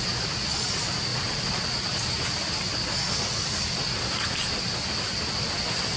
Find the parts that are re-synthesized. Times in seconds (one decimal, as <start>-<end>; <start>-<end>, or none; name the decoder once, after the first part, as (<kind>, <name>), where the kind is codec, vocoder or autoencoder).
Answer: none